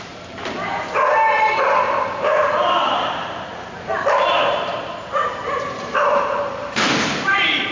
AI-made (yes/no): yes